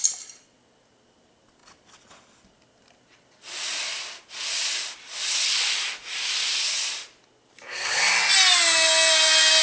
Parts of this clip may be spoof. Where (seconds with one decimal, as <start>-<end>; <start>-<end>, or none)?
none